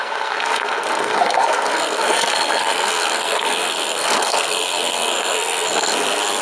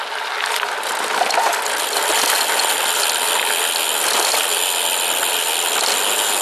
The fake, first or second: first